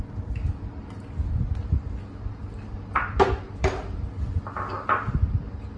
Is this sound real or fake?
real